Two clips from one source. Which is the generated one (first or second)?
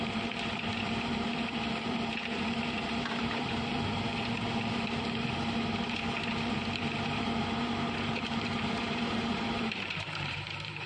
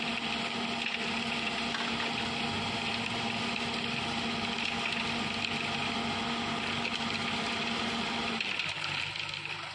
first